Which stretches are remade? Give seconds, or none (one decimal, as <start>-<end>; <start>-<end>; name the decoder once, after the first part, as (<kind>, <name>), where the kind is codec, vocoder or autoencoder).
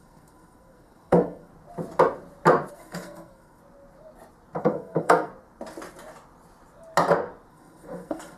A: 0.0-1.5 (codec, SNAC); 2.7-3.6; 4.6-5.3; 7.5-8.4